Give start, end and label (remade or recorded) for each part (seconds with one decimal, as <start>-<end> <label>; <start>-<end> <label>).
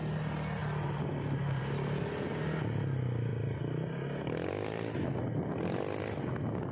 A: 0.0-6.7 recorded